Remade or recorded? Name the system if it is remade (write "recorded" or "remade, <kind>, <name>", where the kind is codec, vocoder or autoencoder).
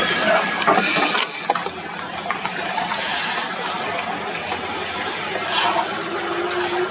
recorded